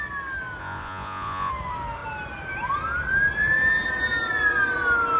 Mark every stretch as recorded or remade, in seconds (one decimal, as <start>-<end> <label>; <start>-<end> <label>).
0.0-0.6 recorded; 0.6-1.5 remade; 1.5-5.2 recorded